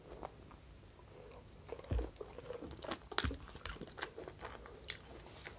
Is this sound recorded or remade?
recorded